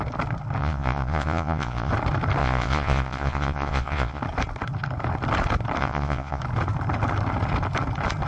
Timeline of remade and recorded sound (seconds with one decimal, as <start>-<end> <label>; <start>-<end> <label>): 0.0-0.6 recorded; 0.6-1.9 remade; 1.9-2.4 recorded; 2.4-4.2 remade; 4.2-5.8 recorded; 5.8-6.4 remade; 6.4-8.3 recorded